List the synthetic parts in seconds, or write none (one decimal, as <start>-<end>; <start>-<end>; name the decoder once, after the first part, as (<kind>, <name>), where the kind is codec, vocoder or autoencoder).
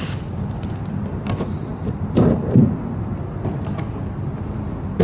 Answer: none